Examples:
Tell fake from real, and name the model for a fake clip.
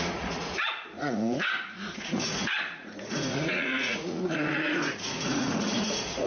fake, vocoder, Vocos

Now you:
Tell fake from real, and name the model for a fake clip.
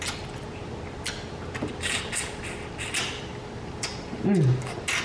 real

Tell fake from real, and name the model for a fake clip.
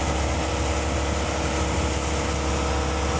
real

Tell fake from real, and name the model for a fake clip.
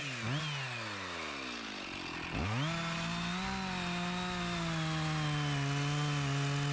real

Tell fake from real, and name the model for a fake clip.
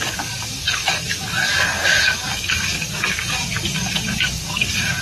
fake, codec, DAC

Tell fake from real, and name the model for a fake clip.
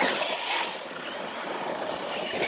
real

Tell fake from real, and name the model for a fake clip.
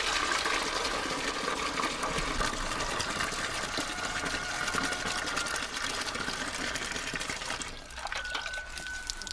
real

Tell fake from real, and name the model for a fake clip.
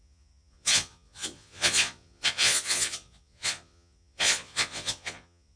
fake, vocoder, Vocos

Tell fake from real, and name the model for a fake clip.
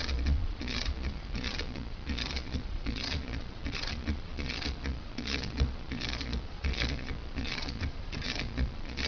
fake, vocoder, Vocos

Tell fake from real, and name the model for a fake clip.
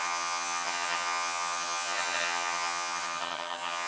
fake, vocoder, HiFi-GAN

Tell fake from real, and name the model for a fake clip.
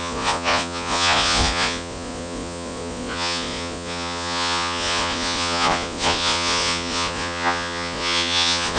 fake, vocoder, Vocos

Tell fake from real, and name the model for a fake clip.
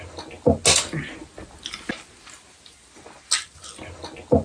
real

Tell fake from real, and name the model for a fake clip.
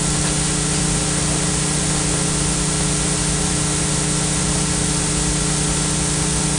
real